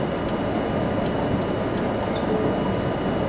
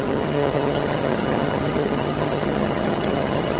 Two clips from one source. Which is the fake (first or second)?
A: second